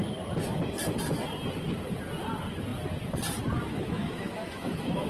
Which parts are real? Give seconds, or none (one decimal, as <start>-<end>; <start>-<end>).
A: 0.0-3.7